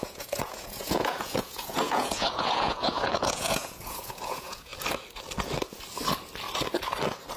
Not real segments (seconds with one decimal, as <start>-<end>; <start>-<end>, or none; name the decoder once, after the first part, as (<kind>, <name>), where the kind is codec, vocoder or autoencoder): 0.0-4.7 (vocoder, Vocos)